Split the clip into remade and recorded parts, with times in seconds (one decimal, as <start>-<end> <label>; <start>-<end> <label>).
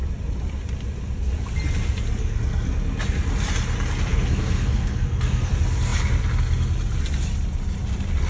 0.0-2.2 recorded; 2.2-2.7 remade; 2.7-4.1 recorded; 4.1-5.5 remade; 5.5-8.3 recorded